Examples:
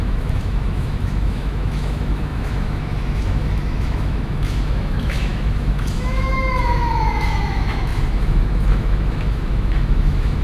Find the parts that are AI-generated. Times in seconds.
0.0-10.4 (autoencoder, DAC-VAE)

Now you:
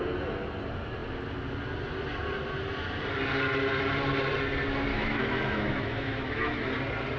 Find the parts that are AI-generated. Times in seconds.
4.9-6.7 (autoencoder, DAC-VAE)

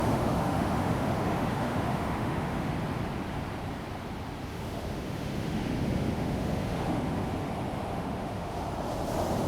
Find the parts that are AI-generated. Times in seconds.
0.0-2.7 (autoencoder, DAC-VAE); 4.5-7.5; 7.9-8.6

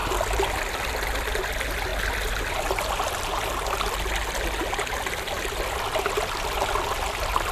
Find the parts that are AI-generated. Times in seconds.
none

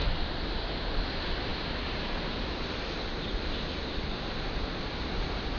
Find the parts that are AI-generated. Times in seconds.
none

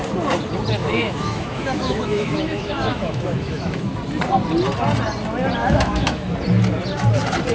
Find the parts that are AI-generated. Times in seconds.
0.8-3.9 (autoencoder, DAC-VAE); 5.6-6.3

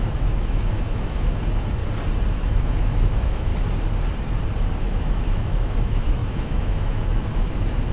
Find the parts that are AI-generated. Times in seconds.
0.0-1.8 (autoencoder, DAC-VAE); 2.3-3.5; 4.8-7.9